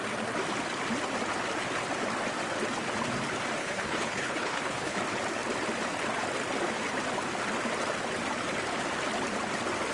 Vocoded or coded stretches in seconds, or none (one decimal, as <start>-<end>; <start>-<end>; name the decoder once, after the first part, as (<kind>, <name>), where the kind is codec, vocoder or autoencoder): 3.6-5.0 (codec, HILCodec)